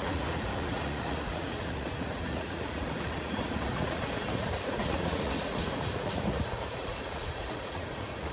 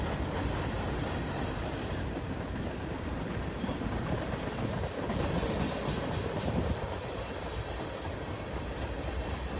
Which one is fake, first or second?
first